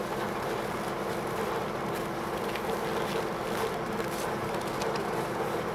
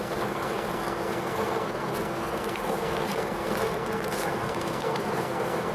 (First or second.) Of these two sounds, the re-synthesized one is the second